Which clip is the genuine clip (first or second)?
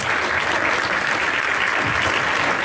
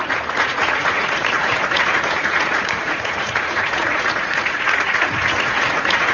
first